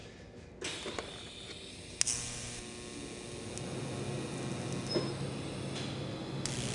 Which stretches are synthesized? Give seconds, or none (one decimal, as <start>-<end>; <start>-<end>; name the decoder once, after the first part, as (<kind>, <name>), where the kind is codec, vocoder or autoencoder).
none